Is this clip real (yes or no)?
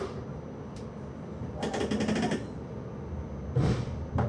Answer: yes